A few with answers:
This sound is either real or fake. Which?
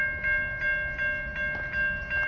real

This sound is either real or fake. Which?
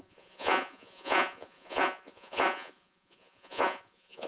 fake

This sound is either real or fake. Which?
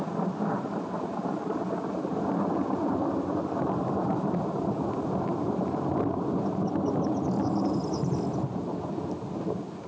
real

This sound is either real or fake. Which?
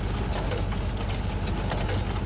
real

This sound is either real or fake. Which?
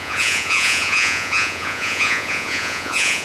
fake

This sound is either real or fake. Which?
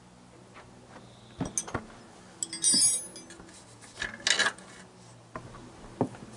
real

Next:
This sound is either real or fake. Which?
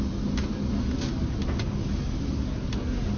real